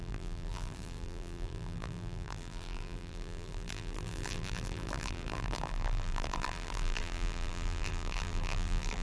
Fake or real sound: fake